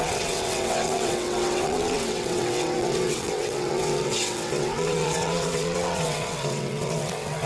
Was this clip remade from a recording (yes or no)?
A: yes